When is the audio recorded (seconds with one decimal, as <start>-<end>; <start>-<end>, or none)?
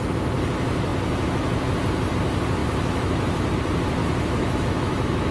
0.0-2.6; 3.5-4.0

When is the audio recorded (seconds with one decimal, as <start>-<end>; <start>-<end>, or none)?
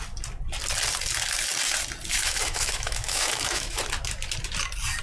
0.0-2.1; 3.8-5.0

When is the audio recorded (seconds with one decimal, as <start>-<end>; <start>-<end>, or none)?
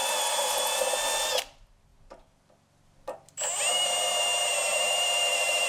0.0-5.7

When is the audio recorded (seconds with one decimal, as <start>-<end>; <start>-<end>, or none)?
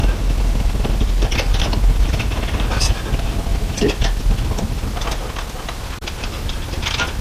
0.0-7.2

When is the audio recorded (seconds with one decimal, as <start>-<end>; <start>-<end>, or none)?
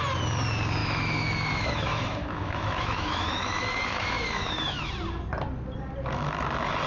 0.0-0.8; 4.9-6.9